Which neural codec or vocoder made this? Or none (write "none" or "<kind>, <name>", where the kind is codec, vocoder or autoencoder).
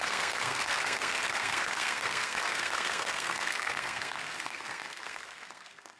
codec, SNAC